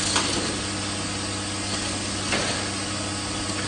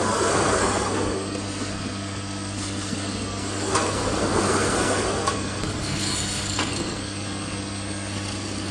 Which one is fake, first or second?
second